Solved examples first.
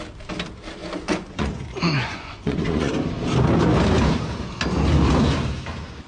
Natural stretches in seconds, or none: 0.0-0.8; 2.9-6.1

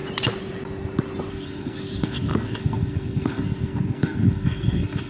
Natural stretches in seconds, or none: 0.0-1.3

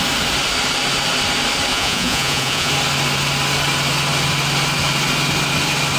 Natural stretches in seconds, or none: 0.0-1.7; 2.7-6.0

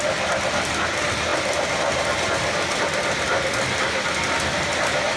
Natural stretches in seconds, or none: 0.0-5.2

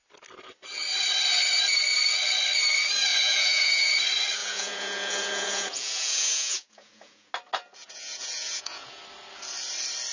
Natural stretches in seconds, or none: 0.0-3.1; 3.9-4.4; 7.3-7.8; 9.0-10.1